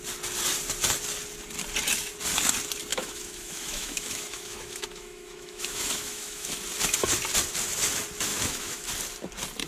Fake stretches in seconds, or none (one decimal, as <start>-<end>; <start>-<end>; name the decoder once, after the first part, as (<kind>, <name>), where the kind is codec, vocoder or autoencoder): 2.9-6.5 (autoencoder, DAC-VAE); 8.3-8.9